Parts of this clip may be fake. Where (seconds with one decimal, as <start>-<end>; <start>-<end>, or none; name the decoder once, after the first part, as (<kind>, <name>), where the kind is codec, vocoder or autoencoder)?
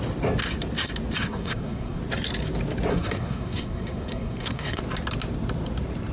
1.2-2.0 (codec, SNAC); 2.9-4.8